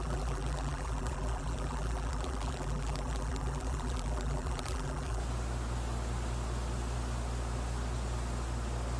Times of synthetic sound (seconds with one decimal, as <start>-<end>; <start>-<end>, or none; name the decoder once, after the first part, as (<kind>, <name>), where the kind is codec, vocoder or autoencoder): 0.0-5.2 (vocoder, BigVGAN v2)